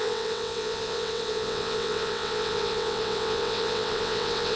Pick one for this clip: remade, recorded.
remade